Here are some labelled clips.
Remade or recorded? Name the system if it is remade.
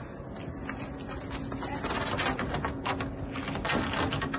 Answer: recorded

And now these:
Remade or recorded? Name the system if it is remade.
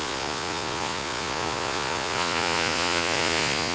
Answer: remade, vocoder, Vocos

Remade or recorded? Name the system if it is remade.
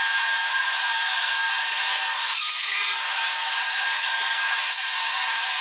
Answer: remade, codec, SNAC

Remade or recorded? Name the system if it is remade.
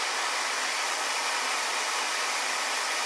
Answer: recorded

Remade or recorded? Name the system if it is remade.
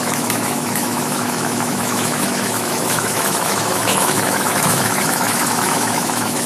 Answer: remade, autoencoder, DAC-VAE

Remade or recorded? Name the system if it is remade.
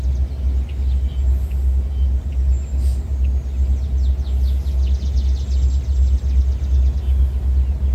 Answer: recorded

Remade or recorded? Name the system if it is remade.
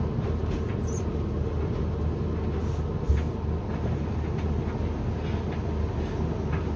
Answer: recorded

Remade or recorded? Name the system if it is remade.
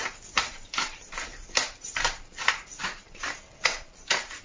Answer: remade, vocoder, BigVGAN v2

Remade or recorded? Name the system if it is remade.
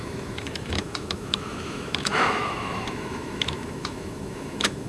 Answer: remade, autoencoder, DAC-VAE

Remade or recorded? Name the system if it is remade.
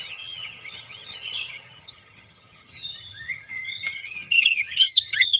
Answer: remade, vocoder, HiFi-GAN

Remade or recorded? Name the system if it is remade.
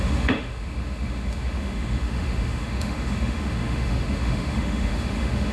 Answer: remade, autoencoder, DAC-VAE